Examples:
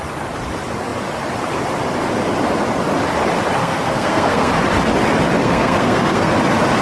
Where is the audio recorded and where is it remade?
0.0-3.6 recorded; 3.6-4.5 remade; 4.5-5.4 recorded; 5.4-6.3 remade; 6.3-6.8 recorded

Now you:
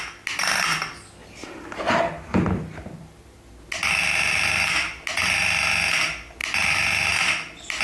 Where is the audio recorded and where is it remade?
0.0-7.8 recorded

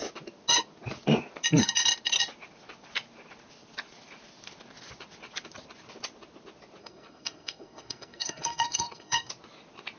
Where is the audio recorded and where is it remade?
0.0-6.8 recorded; 6.8-9.3 remade; 9.3-10.0 recorded

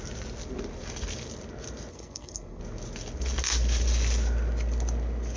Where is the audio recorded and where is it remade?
0.0-1.9 recorded; 1.9-2.6 remade; 2.6-5.4 recorded

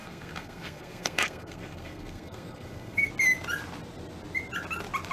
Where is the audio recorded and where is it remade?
0.0-3.1 remade; 3.1-5.1 recorded

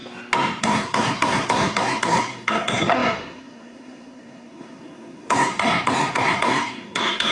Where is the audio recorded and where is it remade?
0.0-0.6 recorded; 0.6-7.3 remade